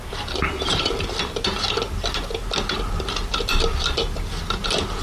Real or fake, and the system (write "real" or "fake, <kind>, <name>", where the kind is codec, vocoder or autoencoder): real